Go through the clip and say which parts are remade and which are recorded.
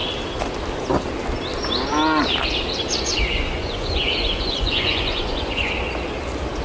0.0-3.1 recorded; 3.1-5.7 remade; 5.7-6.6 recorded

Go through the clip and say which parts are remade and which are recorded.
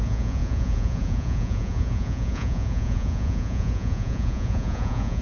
0.0-5.2 remade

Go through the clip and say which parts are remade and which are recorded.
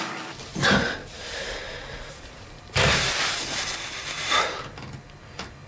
0.0-5.7 remade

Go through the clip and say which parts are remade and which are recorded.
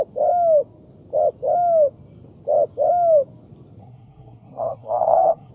0.0-3.8 recorded; 3.8-5.5 remade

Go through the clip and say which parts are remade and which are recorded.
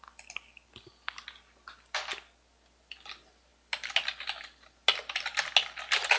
0.0-6.2 recorded